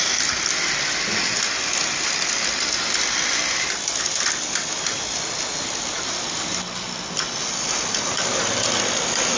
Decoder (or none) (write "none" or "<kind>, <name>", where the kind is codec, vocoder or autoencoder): none